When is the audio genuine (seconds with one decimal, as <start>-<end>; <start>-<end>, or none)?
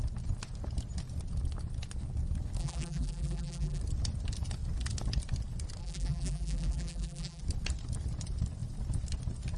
0.0-2.6; 3.8-5.8; 7.4-9.6